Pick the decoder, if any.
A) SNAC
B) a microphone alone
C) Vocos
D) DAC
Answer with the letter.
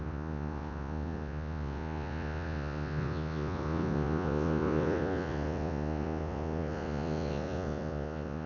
C